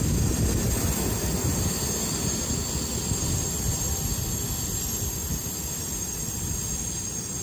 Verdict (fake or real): real